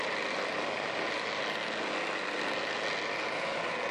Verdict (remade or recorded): recorded